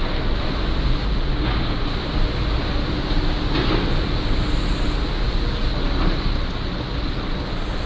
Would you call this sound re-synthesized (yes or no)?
no